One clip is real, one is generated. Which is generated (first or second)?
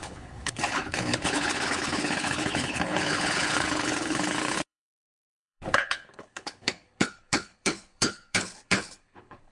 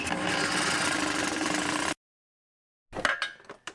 first